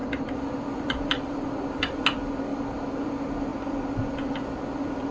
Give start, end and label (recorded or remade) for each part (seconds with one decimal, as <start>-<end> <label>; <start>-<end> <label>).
0.0-1.8 remade; 1.8-2.5 recorded; 2.5-3.0 remade; 3.0-5.1 recorded